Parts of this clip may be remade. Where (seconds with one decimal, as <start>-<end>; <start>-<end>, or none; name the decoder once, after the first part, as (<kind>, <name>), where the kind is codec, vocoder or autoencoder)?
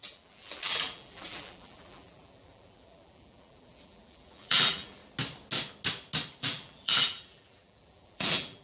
0.0-5.0 (vocoder, BigVGAN v2); 6.4-8.6